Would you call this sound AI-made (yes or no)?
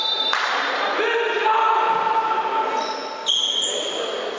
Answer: no